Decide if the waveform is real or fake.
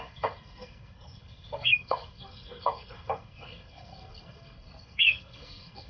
fake